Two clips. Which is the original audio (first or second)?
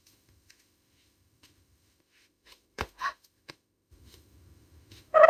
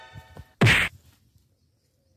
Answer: second